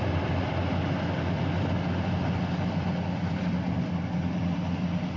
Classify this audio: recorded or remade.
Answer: recorded